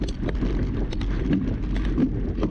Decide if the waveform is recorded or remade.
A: recorded